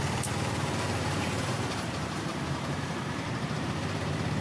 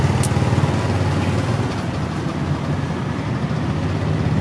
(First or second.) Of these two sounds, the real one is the second